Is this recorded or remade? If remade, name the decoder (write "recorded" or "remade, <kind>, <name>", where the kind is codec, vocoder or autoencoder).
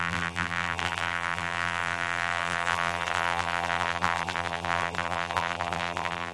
remade, vocoder, BigVGAN v2